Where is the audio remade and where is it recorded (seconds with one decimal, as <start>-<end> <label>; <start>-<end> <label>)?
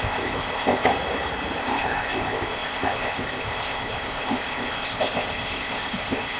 0.0-0.9 remade; 0.9-1.6 recorded; 1.6-6.4 remade